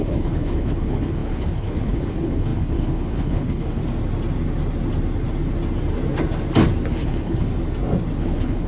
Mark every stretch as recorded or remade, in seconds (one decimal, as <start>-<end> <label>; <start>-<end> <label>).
0.0-3.8 remade; 3.8-6.9 recorded; 6.9-7.5 remade; 7.5-8.2 recorded; 8.2-8.7 remade